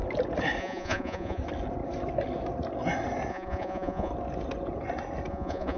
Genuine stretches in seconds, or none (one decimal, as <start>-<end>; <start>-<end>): 0.0-0.6; 1.4-3.3; 4.1-5.3